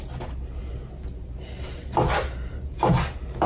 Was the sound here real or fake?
real